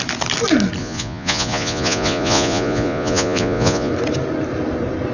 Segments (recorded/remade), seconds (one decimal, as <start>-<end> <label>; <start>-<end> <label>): 0.0-0.8 recorded; 0.8-3.9 remade; 3.9-5.1 recorded